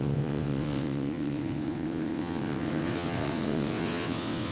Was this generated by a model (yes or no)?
yes